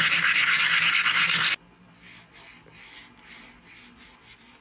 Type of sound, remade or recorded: recorded